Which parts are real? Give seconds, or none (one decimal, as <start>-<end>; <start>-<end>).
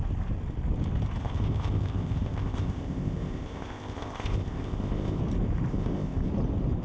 0.0-1.2; 5.2-5.7; 6.3-6.8